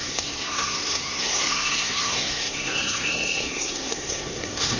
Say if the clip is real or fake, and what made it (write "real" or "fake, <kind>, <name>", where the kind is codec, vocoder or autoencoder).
fake, codec, SNAC